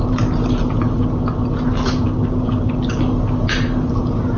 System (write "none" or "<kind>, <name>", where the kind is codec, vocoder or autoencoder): none